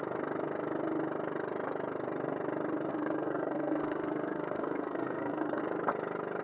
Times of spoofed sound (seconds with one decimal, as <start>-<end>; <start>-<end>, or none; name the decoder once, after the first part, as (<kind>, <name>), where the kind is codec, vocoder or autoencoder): 2.9-5.6 (codec, SNAC)

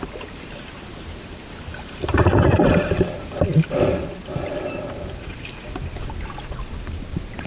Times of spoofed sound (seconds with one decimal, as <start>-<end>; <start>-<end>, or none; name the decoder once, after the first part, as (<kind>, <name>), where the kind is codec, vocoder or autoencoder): none

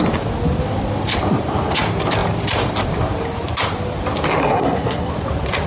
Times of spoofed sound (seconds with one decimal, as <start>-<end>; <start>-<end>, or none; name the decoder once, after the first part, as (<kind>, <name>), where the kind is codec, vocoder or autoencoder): 4.4-5.1 (codec, SNAC)

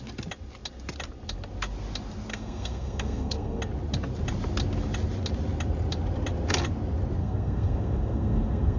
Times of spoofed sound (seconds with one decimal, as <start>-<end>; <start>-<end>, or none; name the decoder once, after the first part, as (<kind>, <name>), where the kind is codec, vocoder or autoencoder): 2.3-3.6 (codec, SNAC); 7.2-8.8

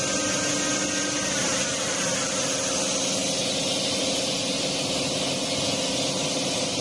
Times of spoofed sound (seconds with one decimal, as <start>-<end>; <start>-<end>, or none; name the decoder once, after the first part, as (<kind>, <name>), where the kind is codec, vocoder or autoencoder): none

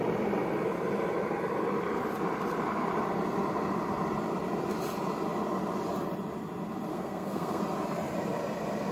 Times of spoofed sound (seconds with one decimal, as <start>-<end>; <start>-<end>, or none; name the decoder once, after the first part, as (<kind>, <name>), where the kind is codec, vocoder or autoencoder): 6.9-7.6 (codec, SNAC)

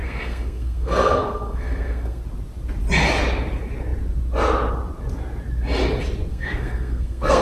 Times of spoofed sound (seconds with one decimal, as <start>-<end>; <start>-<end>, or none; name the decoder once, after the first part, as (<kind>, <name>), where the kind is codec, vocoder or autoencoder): 0.0-2.2 (codec, SNAC); 6.3-7.4